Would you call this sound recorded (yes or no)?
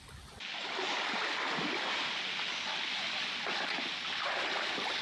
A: yes